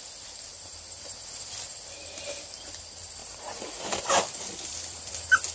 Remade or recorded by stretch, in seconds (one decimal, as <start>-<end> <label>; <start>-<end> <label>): 0.0-0.5 recorded; 0.5-1.6 remade; 1.6-3.2 recorded; 3.2-5.1 remade; 5.1-5.5 recorded